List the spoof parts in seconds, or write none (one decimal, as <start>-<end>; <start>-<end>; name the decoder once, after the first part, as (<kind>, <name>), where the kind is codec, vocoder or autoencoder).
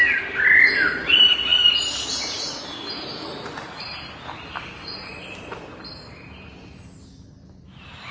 none